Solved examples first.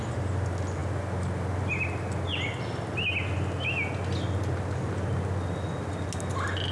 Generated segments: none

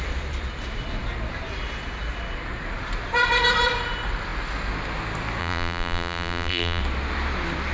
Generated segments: 5.4-6.8 (vocoder, BigVGAN v2)

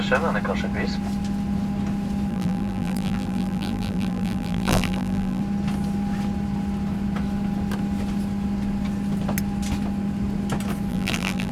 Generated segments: 2.3-5.4 (vocoder, BigVGAN v2); 10.9-11.5

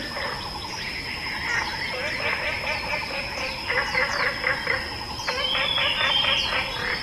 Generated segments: 0.0-7.0 (vocoder, BigVGAN v2)